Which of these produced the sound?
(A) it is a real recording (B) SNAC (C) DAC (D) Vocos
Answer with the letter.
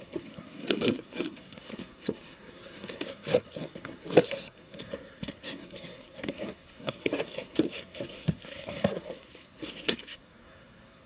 B